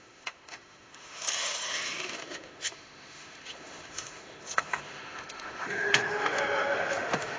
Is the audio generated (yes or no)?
yes